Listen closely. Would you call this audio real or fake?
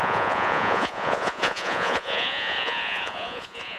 fake